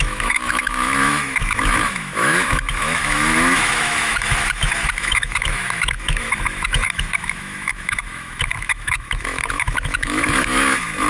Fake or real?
fake